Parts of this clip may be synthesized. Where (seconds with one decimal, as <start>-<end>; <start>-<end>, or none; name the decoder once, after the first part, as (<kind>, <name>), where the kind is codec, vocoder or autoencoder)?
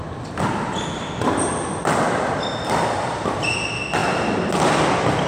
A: none